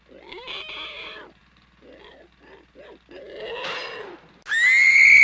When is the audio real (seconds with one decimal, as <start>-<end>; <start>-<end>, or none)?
0.0-5.2